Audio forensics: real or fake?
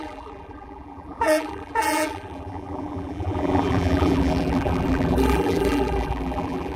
fake